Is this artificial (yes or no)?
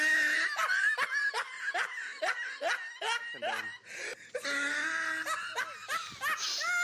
no